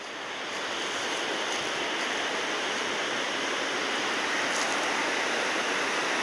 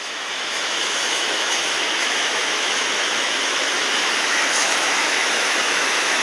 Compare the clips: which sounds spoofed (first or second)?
second